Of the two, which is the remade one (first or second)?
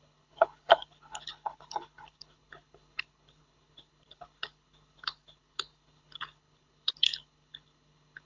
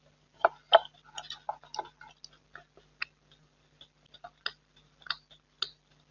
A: first